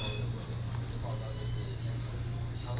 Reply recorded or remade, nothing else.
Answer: recorded